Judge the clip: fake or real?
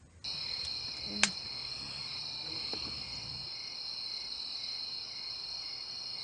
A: real